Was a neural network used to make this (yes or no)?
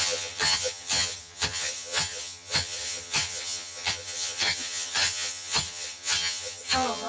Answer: yes